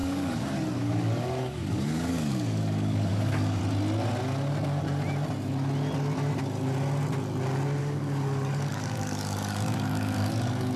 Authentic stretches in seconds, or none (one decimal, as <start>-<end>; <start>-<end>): 3.6-7.8